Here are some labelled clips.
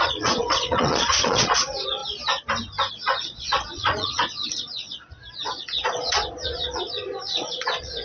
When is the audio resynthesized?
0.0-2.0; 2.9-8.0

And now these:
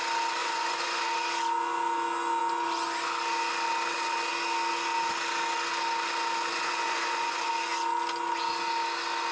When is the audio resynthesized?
0.4-1.1; 6.5-7.5

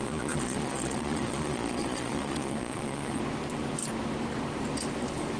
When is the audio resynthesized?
0.0-3.2